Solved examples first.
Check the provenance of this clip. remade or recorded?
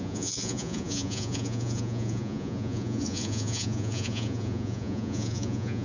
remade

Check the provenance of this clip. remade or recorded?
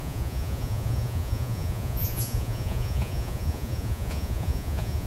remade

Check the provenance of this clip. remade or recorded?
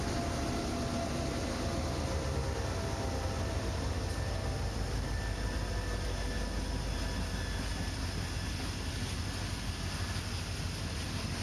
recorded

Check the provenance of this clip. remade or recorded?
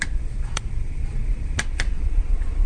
remade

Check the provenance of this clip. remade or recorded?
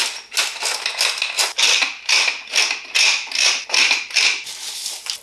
recorded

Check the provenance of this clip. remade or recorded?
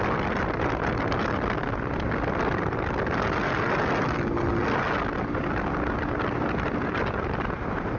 recorded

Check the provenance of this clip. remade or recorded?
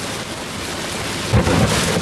recorded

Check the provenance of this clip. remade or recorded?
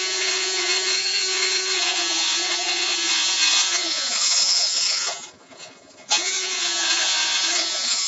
remade